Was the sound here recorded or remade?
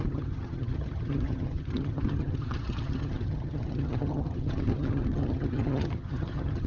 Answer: remade